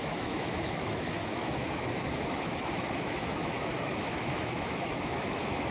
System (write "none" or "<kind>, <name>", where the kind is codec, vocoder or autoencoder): autoencoder, DAC-VAE